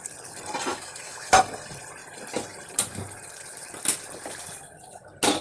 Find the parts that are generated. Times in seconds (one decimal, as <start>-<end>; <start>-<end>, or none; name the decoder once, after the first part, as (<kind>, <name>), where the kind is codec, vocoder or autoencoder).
0.7-1.4 (autoencoder, DAC-VAE)